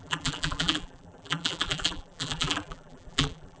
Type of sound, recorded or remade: remade